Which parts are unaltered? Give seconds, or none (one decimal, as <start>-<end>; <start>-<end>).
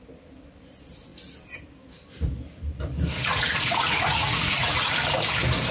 0.0-3.3; 4.9-5.7